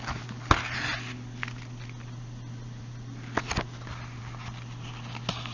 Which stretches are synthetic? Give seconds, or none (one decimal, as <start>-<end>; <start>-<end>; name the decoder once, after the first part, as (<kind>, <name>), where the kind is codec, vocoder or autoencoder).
none